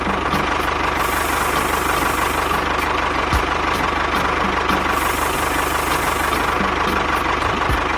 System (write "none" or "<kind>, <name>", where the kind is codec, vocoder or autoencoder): none